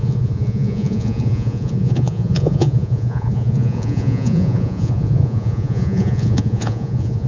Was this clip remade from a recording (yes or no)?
yes